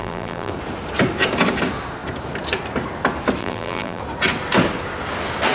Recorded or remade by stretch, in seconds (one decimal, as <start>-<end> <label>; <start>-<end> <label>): 0.0-0.5 remade; 0.5-3.4 recorded; 3.4-4.0 remade; 4.0-5.5 recorded